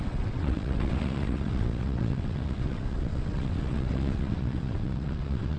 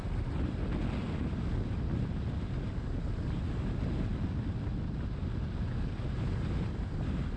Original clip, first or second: second